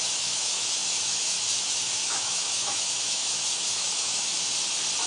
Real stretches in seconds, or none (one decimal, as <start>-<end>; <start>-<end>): 4.3-5.1

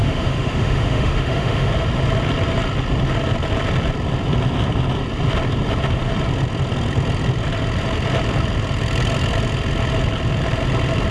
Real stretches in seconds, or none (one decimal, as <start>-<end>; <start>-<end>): 1.7-11.1

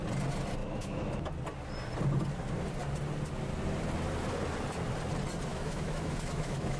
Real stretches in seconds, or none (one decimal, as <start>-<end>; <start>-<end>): 0.0-0.6; 1.1-5.5